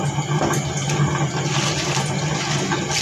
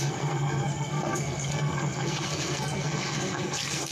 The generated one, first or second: second